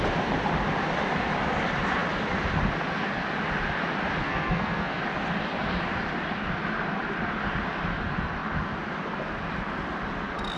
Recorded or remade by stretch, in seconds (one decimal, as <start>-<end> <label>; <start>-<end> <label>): 0.0-4.2 recorded; 4.2-5.0 remade; 5.0-10.6 recorded